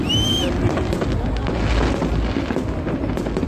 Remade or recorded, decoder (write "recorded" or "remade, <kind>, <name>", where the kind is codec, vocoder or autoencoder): recorded